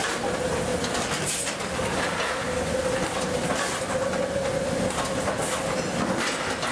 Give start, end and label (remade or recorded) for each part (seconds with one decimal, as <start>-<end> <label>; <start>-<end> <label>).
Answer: 0.0-6.7 recorded